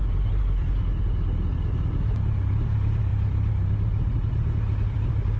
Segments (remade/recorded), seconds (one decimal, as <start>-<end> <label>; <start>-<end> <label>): 0.0-5.4 recorded